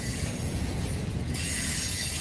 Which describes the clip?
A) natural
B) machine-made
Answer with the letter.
B